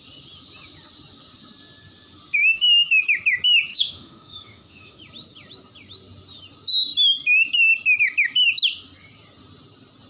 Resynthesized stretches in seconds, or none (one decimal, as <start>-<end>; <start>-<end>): 2.4-3.0; 3.7-5.0